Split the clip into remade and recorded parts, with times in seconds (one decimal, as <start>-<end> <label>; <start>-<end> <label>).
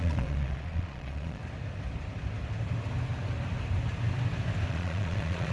0.0-1.4 remade; 1.4-4.7 recorded; 4.7-5.5 remade